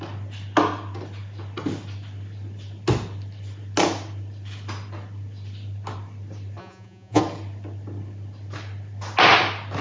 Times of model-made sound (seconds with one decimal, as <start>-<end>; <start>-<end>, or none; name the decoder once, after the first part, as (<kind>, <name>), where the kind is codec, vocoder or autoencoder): 6.6-7.2 (vocoder, Vocos)